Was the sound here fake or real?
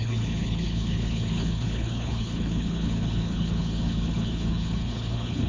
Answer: fake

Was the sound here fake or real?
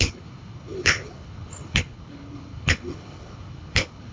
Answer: fake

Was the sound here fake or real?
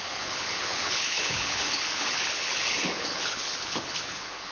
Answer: fake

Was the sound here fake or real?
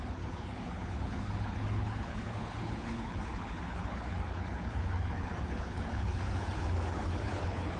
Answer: fake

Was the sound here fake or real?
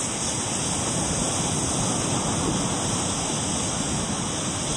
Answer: real